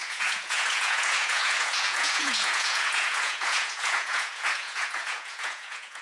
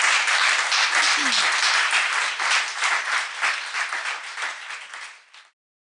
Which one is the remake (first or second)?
first